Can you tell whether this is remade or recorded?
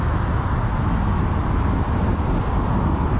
recorded